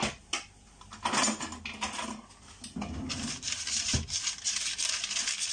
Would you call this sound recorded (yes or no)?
yes